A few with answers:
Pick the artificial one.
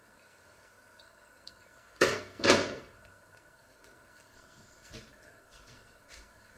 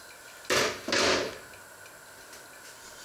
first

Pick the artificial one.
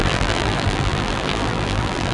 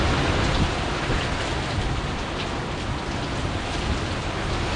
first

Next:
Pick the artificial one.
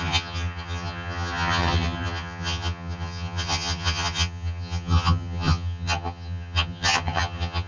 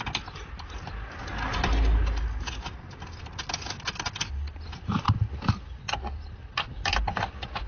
first